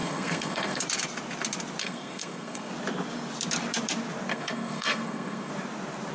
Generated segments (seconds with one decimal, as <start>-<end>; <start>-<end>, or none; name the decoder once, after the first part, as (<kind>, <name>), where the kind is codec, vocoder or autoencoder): 0.0-0.8 (codec, SNAC); 1.8-2.7; 4.3-5.5